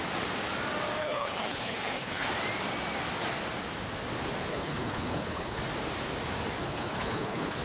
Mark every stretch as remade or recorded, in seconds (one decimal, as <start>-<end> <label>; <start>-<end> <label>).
0.0-1.0 recorded; 1.0-2.3 remade; 2.3-4.5 recorded; 4.5-5.6 remade; 5.6-6.6 recorded; 6.6-7.6 remade